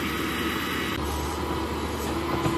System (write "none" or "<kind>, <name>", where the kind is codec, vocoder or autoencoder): none